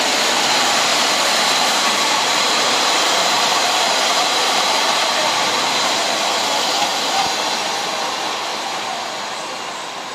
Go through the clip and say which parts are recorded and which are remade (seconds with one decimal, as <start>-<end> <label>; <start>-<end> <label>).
0.0-0.9 recorded; 0.9-6.0 remade; 6.0-8.5 recorded; 8.5-9.1 remade; 9.1-10.1 recorded